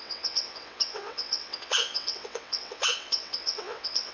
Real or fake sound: fake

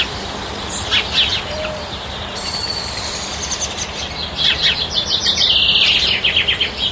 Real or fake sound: real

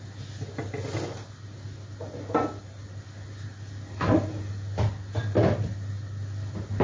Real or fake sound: real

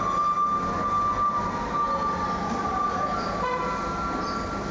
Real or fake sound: real